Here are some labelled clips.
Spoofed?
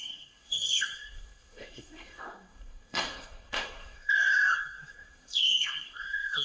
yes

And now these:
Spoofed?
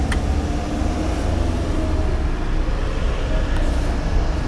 no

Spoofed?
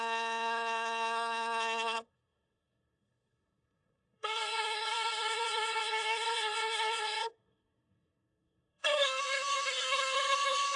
yes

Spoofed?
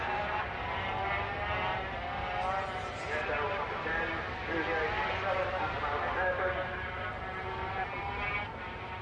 no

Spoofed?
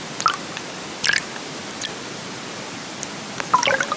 no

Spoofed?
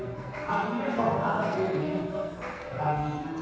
yes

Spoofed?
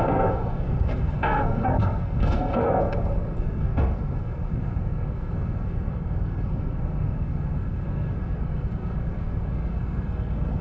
yes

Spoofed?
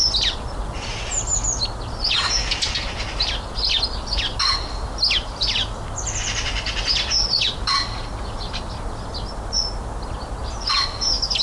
no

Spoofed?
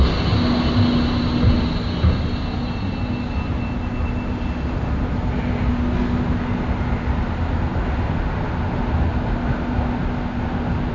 no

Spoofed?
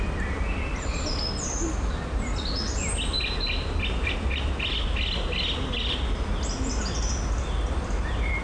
no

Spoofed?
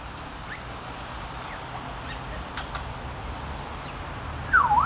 no